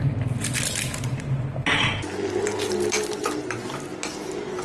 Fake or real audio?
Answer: real